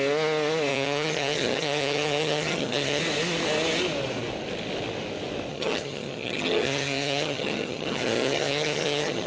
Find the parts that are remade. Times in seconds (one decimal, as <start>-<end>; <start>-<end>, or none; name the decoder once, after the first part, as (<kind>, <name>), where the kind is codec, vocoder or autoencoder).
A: 0.7-3.0 (vocoder, HiFi-GAN); 5.5-9.3